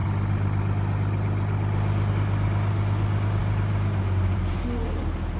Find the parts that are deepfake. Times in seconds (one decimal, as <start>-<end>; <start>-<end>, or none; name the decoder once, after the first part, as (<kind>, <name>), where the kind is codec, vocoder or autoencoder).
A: 3.4-4.5 (vocoder, BigVGAN v2)